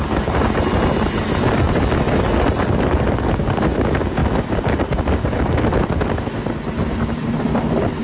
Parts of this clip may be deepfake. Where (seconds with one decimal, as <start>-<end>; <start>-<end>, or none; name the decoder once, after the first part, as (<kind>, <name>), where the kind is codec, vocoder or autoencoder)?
none